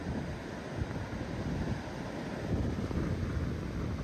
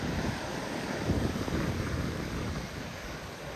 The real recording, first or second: first